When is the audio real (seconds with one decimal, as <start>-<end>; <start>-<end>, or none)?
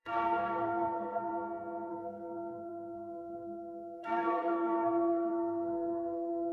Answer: 1.3-1.9